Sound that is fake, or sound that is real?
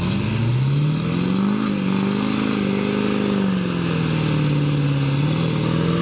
real